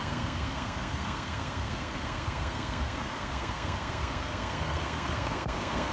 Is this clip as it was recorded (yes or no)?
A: no